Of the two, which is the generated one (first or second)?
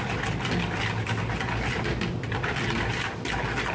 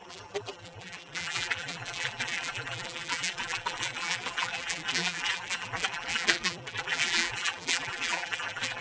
second